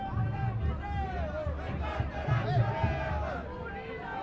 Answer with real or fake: real